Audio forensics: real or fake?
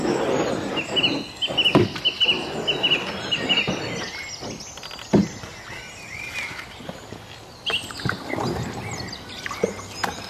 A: real